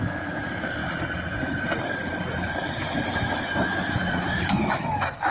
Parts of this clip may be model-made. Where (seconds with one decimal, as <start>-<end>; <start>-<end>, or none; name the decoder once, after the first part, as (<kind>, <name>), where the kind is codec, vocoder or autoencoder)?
0.0-0.8 (autoencoder, DAC-VAE); 2.8-5.3